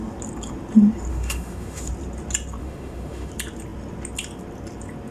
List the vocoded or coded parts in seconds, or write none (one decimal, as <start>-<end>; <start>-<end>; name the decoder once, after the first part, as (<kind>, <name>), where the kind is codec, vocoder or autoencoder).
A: 1.1-1.9 (autoencoder, DAC-VAE); 2.6-3.3